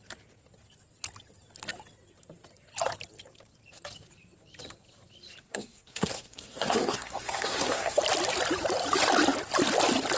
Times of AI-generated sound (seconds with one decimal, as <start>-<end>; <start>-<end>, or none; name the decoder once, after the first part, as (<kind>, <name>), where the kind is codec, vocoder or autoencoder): 5.4-8.0 (codec, SNAC)